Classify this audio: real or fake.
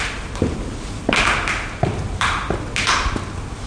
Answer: real